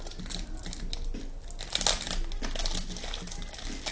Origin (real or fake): real